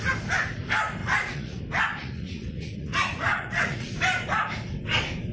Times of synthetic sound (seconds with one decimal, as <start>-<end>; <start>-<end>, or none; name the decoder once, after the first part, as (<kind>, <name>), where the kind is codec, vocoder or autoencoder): 1.0-1.6 (vocoder, Vocos); 2.0-3.9